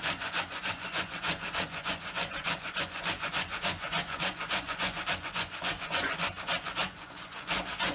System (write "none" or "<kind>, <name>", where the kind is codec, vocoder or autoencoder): vocoder, Vocos